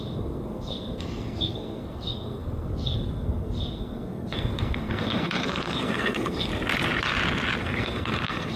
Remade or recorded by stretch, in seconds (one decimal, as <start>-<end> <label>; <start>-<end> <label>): 0.0-6.5 remade; 6.5-7.6 recorded; 7.6-8.6 remade